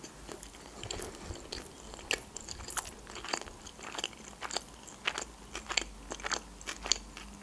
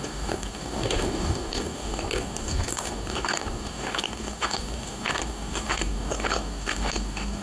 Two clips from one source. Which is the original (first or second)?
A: first